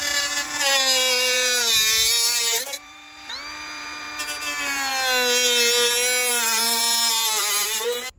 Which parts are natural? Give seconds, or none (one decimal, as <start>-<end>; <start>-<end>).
4.9-6.3